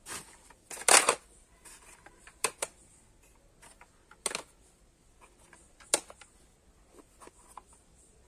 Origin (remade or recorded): recorded